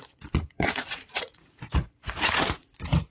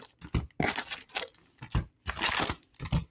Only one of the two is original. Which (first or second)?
second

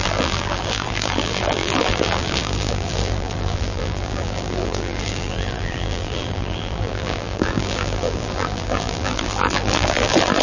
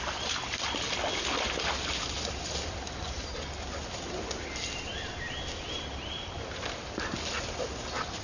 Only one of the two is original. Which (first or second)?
second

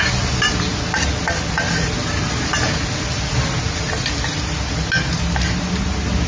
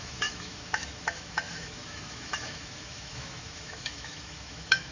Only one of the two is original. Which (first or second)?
first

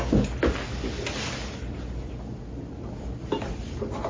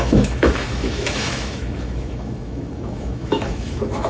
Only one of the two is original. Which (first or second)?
first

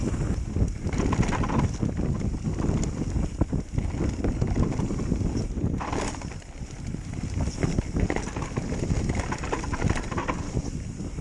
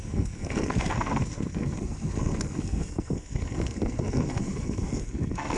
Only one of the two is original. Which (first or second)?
first